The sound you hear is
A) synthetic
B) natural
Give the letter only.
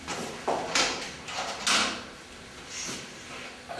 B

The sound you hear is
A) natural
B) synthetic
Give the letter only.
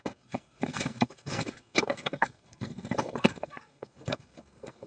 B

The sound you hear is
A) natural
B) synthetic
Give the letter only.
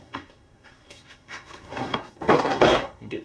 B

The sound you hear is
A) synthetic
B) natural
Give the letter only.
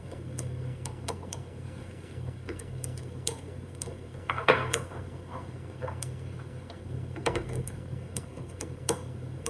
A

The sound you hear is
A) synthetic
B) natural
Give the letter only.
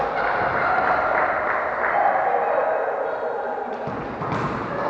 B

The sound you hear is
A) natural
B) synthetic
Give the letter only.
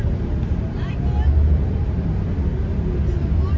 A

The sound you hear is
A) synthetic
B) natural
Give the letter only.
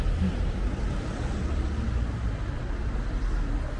B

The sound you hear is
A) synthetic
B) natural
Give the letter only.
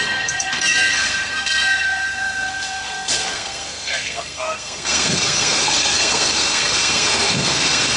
A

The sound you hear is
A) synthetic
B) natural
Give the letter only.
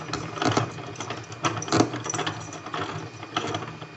B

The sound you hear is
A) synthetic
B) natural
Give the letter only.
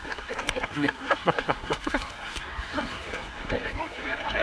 A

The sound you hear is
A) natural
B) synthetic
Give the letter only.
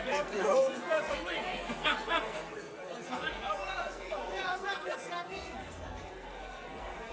B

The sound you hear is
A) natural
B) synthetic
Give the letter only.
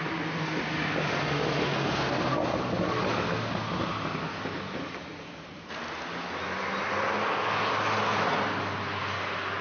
A